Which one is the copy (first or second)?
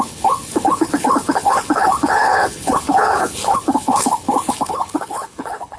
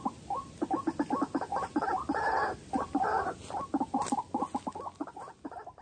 first